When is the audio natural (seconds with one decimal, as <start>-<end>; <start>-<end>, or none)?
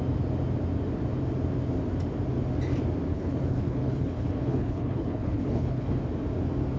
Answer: 0.0-3.1; 6.0-6.8